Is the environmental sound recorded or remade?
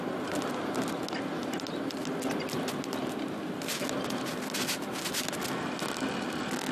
recorded